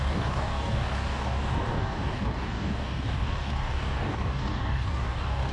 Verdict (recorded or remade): remade